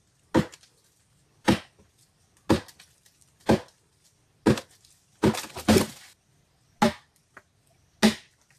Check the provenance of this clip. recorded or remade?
recorded